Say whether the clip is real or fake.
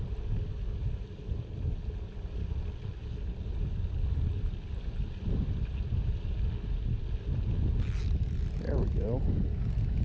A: real